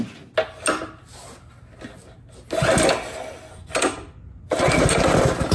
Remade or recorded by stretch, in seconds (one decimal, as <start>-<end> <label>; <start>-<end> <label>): 0.0-5.5 recorded